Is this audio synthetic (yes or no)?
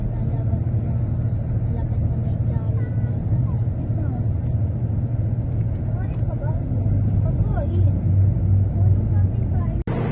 no